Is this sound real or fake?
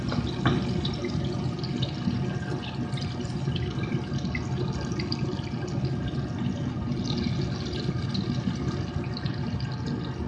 real